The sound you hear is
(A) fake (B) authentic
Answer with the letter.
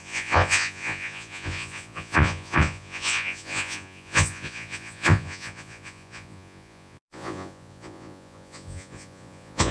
A